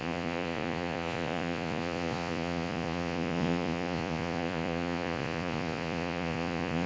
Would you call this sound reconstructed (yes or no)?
yes